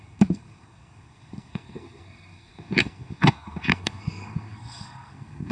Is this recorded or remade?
remade